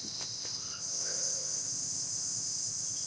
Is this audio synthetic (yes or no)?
yes